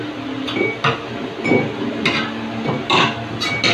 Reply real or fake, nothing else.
real